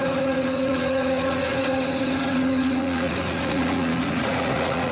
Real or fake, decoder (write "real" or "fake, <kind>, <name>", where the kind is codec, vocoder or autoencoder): fake, vocoder, Vocos